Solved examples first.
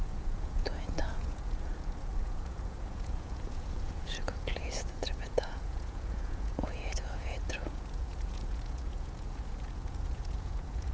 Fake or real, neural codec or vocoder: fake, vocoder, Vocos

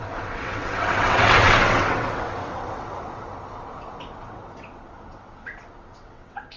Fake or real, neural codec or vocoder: fake, vocoder, WaveNeXt